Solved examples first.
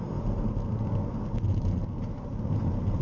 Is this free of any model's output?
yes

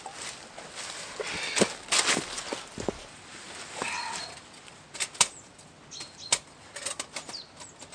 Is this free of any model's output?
yes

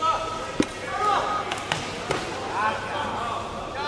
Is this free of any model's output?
yes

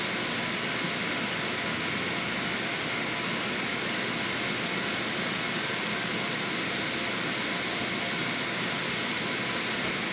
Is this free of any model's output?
yes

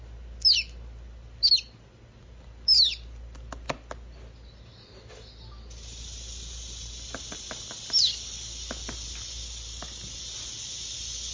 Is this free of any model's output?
yes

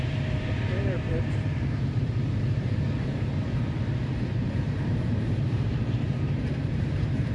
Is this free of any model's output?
no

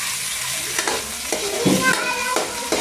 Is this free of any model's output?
yes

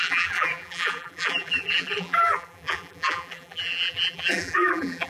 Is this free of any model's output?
no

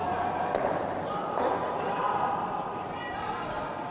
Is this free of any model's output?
no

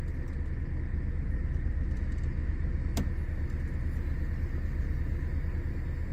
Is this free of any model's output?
yes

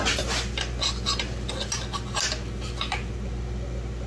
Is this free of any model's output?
yes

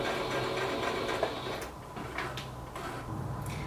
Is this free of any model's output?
no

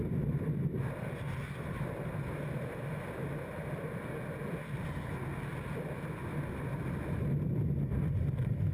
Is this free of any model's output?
yes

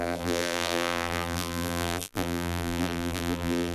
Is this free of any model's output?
no